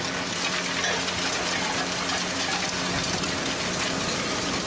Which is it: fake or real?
real